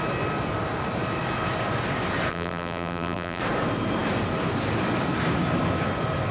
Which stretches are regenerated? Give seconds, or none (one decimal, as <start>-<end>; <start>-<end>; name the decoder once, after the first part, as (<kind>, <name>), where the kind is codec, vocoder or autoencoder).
2.3-3.4 (vocoder, BigVGAN v2)